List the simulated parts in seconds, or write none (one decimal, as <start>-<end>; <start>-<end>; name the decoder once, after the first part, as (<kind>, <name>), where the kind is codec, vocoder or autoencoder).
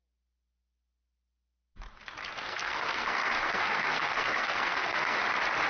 2.3-5.2 (codec, SNAC)